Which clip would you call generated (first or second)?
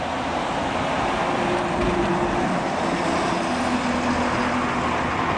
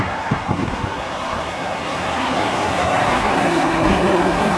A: second